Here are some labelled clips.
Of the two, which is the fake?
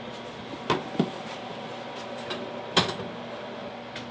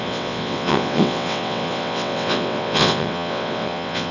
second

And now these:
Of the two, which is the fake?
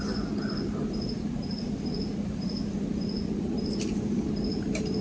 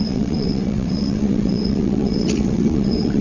second